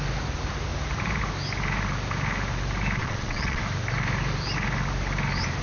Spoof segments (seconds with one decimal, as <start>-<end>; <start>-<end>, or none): 3.0-3.6